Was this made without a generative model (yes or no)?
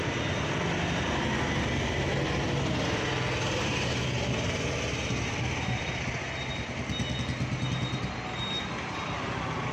yes